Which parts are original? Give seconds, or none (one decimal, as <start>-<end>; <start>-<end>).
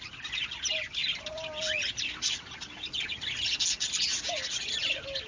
0.0-5.3